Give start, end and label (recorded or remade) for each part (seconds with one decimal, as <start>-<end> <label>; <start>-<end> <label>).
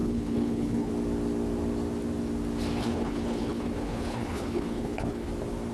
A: 0.0-0.9 remade; 0.9-2.8 recorded; 2.8-5.3 remade; 5.3-5.7 recorded